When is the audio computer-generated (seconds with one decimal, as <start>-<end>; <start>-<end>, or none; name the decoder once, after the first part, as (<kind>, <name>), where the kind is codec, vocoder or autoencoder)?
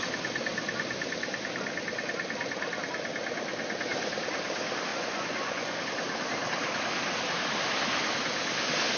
4.9-5.8 (vocoder, Vocos)